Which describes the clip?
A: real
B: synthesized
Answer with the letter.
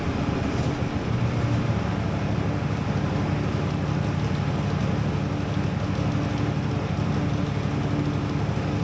A